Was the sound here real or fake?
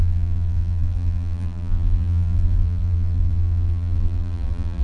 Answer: fake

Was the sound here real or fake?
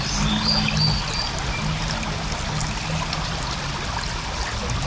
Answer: real